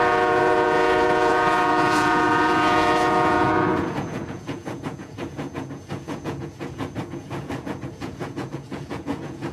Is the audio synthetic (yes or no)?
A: yes